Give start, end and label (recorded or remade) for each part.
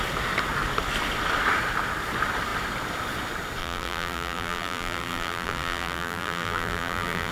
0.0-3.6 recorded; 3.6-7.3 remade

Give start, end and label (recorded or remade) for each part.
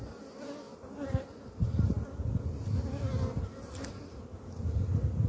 0.0-5.3 recorded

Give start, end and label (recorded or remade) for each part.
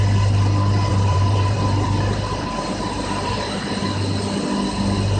0.0-0.9 recorded; 0.9-3.8 remade; 3.8-5.2 recorded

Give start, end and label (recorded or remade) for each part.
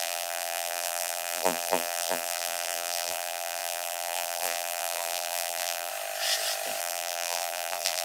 0.0-5.9 remade; 5.9-6.8 recorded; 6.8-8.0 remade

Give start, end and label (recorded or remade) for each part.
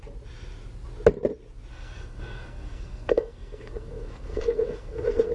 0.0-1.7 recorded; 1.7-5.3 remade